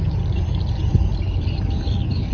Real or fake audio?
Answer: fake